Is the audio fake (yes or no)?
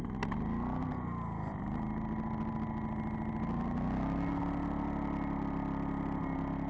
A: no